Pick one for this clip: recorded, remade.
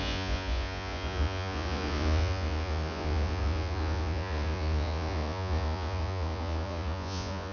remade